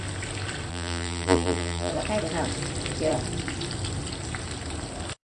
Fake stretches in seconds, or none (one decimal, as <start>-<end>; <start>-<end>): 0.7-1.9